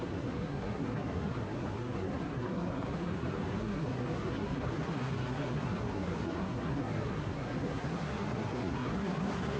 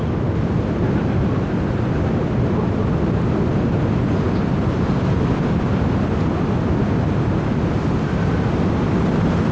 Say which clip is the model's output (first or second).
first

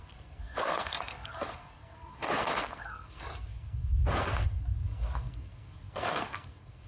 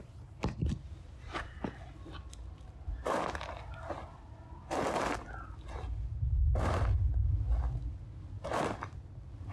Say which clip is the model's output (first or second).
first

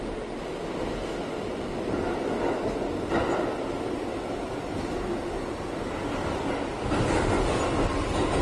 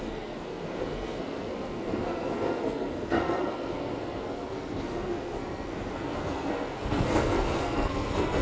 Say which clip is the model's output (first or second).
second